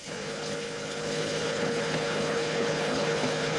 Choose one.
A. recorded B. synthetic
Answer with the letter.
B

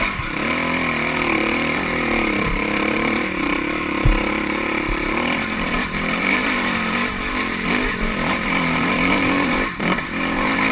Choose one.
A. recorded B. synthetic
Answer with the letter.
B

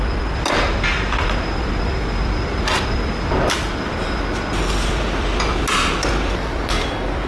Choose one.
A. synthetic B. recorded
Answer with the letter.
B